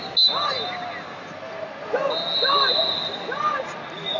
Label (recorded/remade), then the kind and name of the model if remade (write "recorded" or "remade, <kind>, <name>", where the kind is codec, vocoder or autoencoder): recorded